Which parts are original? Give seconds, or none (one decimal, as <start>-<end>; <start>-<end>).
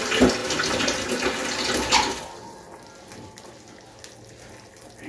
0.0-5.1